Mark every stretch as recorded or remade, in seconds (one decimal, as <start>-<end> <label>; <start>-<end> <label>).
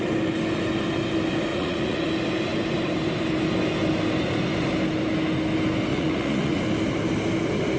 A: 0.0-1.5 recorded; 1.5-2.1 remade; 2.1-5.9 recorded; 5.9-6.6 remade; 6.6-7.8 recorded